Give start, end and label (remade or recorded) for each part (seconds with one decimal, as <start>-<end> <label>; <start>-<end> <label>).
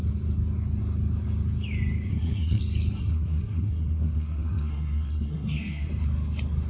0.0-2.1 recorded; 2.1-2.6 remade; 2.6-3.0 recorded; 3.0-5.9 remade; 5.9-6.7 recorded